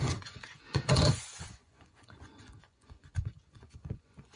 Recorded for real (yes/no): no